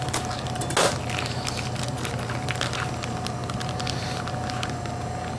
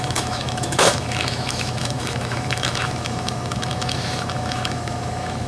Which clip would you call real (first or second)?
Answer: first